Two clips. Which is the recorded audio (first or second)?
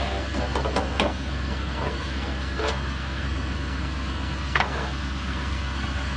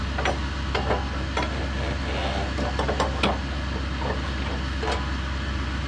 second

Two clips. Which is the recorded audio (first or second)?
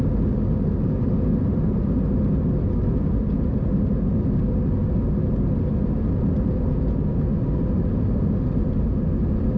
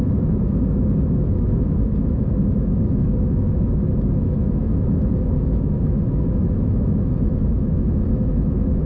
first